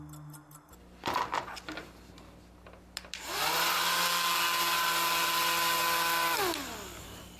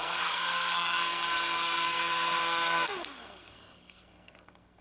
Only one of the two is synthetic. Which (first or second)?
second